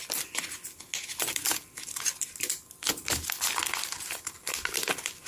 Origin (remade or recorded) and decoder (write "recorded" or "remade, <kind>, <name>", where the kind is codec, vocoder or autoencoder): recorded